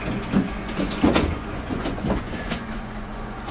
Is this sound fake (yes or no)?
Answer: yes